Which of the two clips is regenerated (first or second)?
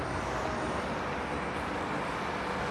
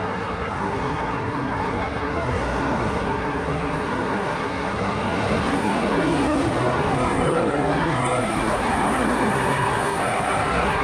second